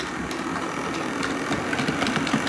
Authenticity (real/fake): real